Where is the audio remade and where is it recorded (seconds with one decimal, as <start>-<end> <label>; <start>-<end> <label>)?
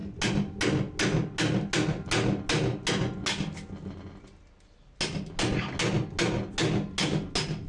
0.0-7.7 recorded